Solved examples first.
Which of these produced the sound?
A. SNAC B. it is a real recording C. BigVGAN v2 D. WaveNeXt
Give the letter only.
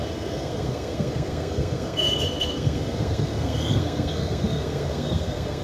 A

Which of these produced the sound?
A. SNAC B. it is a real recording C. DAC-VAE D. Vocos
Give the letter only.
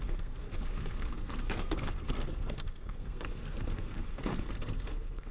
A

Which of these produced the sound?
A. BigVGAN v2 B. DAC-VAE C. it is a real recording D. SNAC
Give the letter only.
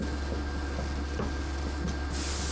C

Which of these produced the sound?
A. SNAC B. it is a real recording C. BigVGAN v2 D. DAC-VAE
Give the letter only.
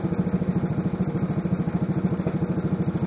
B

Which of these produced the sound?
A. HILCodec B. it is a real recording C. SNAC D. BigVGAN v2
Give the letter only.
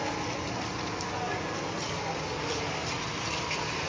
B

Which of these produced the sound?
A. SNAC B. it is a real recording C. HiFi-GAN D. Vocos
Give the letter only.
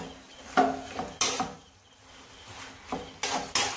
B